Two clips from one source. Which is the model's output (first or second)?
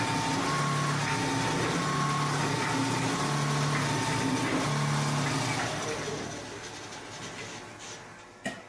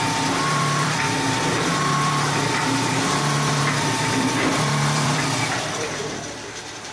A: second